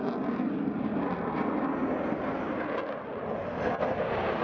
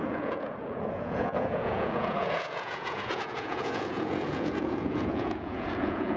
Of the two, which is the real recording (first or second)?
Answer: first